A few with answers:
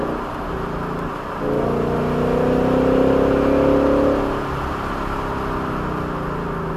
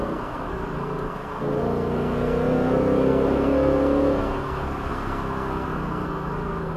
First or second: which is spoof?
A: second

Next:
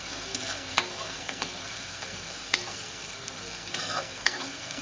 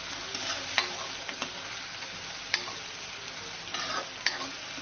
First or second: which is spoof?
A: first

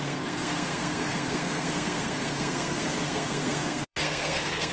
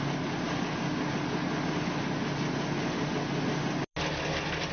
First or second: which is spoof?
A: first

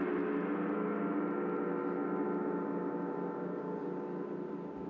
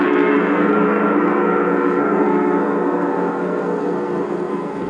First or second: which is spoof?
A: second